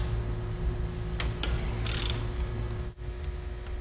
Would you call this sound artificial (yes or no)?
no